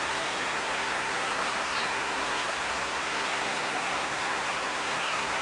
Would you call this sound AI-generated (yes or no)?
yes